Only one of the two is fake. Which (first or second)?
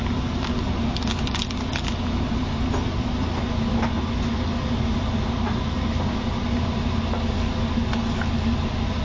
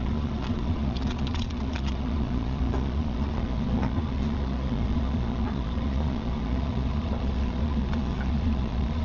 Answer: second